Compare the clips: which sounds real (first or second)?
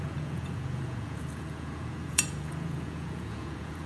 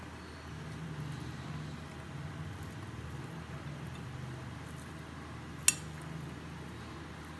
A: second